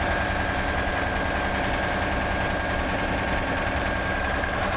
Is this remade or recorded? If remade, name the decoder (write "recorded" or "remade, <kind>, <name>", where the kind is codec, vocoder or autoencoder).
recorded